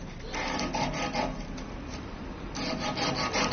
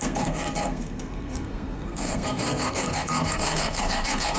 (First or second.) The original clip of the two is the first